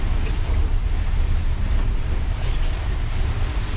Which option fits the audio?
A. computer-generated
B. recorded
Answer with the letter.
B